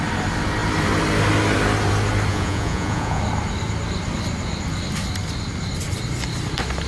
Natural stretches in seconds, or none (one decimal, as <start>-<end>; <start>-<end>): 0.0-2.3; 3.2-6.9